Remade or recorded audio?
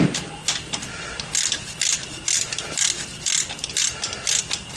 recorded